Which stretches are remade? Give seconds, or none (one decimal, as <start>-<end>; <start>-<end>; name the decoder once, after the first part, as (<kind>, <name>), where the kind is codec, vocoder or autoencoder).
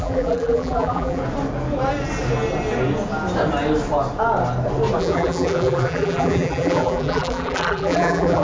0.0-1.2 (vocoder, BigVGAN v2); 5.0-8.4